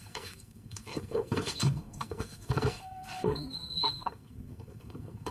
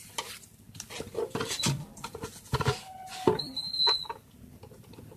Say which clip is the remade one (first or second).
first